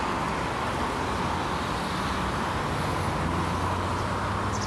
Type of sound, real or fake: real